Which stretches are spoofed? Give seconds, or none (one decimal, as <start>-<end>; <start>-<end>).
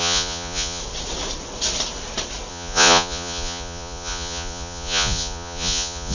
0.0-0.8; 2.5-6.1